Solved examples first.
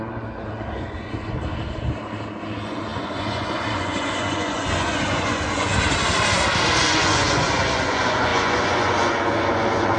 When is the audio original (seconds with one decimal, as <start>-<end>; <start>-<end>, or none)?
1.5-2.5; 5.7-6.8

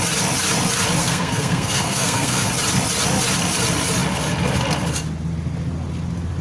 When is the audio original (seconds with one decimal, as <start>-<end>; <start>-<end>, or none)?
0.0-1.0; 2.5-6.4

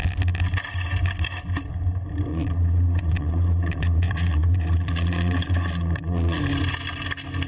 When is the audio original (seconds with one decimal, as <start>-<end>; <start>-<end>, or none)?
0.0-2.3; 6.4-7.5